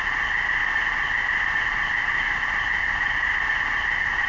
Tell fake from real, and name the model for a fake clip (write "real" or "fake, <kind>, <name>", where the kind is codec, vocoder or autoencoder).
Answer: real